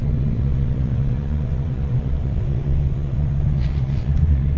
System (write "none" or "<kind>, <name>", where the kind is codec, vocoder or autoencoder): vocoder, WaveNeXt